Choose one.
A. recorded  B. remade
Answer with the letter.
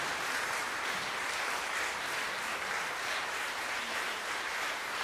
B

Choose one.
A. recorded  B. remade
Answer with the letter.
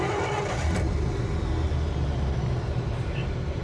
B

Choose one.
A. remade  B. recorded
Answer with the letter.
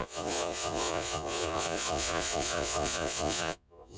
A